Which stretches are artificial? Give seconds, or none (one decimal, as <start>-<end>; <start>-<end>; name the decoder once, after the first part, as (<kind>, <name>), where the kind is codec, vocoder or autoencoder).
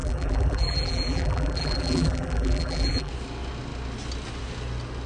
0.0-3.1 (vocoder, BigVGAN v2)